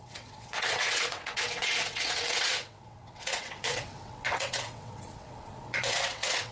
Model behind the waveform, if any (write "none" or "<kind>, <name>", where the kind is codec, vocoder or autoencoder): vocoder, WaveNeXt